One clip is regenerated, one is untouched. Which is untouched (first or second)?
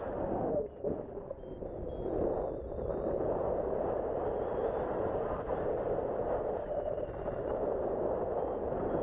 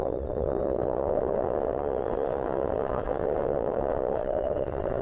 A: first